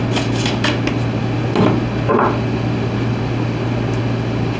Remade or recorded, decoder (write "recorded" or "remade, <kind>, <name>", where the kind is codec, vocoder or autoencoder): recorded